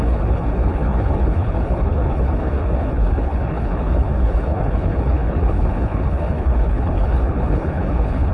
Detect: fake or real fake